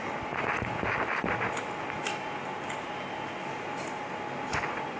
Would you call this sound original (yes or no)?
yes